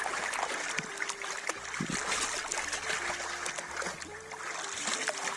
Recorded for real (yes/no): yes